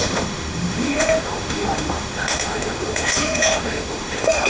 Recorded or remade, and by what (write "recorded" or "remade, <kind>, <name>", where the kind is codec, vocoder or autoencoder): remade, autoencoder, DAC-VAE